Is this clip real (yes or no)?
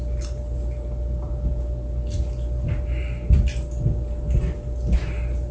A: yes